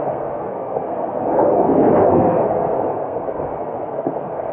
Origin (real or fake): fake